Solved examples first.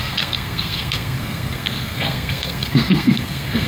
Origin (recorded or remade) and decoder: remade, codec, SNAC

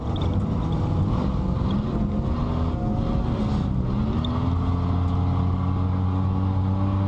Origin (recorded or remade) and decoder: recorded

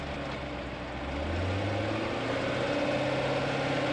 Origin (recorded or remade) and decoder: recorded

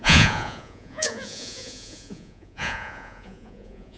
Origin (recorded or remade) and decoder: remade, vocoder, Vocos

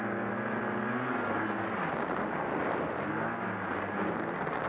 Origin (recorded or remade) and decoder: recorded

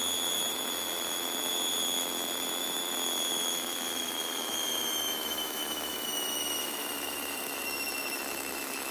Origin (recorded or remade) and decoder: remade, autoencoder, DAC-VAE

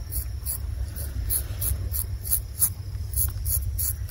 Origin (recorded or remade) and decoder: recorded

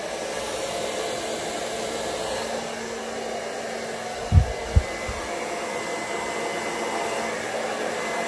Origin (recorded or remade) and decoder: recorded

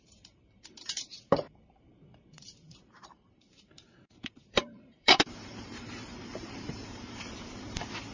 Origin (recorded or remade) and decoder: remade, vocoder, BigVGAN v2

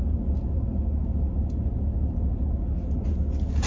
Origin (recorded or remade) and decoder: recorded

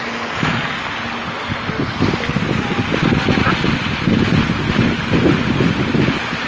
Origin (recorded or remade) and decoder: recorded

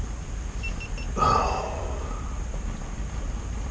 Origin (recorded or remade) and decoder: recorded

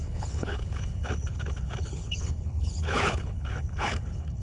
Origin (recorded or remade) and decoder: remade, codec, HILCodec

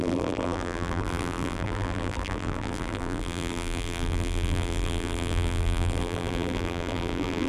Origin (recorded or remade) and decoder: remade, vocoder, BigVGAN v2